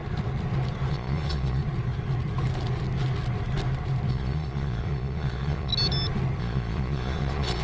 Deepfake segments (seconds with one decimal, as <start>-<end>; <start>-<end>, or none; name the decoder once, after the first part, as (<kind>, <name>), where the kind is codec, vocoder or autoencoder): 0.9-1.6 (vocoder, Vocos); 4.1-5.7; 6.4-7.6